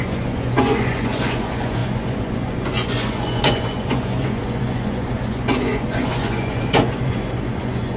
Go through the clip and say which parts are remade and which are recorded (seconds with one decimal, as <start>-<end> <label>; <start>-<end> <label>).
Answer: 0.0-8.0 remade